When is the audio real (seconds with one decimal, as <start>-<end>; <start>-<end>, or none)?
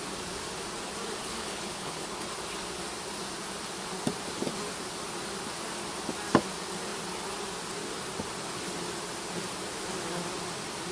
0.0-1.2; 2.3-10.9